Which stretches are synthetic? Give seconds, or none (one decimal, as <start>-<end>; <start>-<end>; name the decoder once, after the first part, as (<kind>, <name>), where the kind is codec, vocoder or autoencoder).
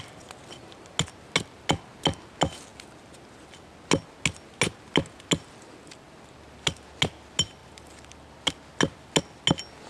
none